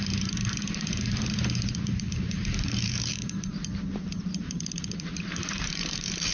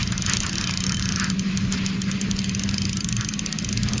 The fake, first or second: first